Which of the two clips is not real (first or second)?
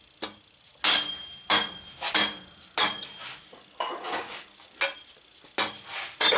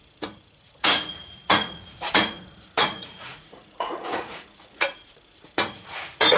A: second